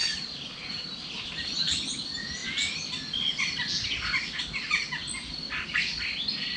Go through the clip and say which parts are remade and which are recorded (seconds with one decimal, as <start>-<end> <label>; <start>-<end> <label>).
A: 0.0-6.6 recorded